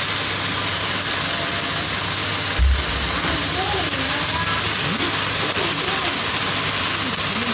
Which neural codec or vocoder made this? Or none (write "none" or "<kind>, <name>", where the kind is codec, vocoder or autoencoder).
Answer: none